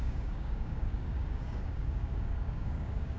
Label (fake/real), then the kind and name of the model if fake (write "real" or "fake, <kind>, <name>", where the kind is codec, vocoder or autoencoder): fake, codec, DAC